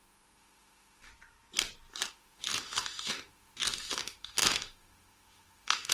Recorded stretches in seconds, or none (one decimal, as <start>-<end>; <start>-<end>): 1.1-2.1